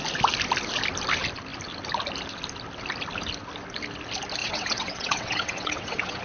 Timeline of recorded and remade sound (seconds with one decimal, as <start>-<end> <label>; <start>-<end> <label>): 0.0-4.4 recorded; 4.4-6.2 remade